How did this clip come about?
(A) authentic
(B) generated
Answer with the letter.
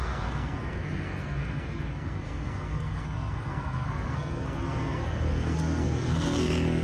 B